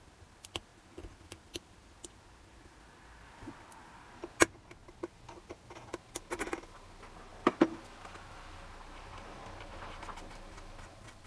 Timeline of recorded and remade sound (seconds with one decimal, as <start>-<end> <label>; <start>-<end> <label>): 0.0-11.3 recorded